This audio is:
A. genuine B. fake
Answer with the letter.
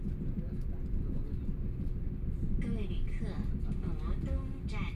A